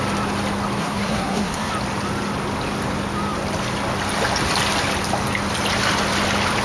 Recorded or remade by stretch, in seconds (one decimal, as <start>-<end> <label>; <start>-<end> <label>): 0.0-0.8 recorded; 0.8-1.7 remade; 1.7-6.6 recorded